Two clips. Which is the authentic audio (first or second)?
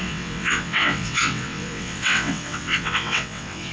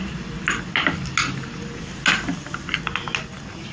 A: second